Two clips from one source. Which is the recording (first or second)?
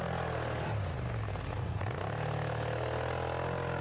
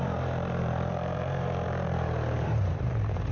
first